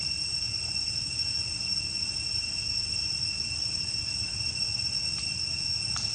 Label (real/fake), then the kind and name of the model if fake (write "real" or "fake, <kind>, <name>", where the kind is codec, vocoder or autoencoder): real